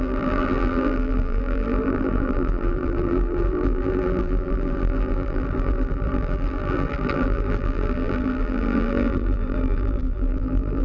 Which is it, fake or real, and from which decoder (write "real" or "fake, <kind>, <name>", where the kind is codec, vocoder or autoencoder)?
fake, vocoder, BigVGAN v2